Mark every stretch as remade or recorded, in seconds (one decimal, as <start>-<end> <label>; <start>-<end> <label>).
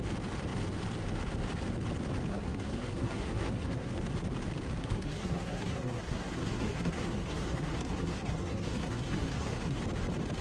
0.0-2.3 recorded; 2.3-3.9 remade; 3.9-4.8 recorded; 4.8-9.8 remade; 9.8-10.4 recorded